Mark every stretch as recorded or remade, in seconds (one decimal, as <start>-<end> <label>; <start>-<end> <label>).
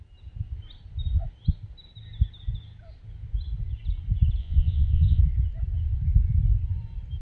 0.0-4.4 recorded; 4.4-5.2 remade; 5.2-7.2 recorded